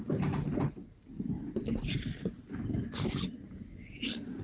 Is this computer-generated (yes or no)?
no